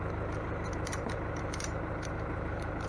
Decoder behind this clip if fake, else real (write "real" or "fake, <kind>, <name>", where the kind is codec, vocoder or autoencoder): fake, vocoder, BigVGAN v2